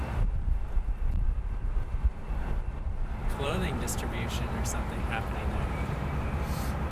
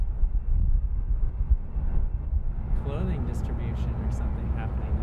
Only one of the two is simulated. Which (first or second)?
first